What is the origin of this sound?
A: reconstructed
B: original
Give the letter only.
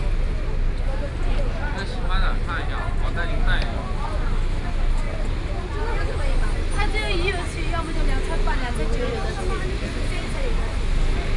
B